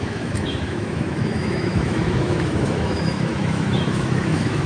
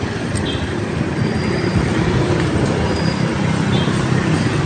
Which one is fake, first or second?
first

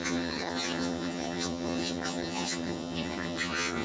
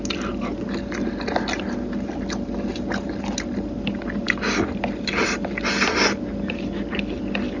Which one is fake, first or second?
first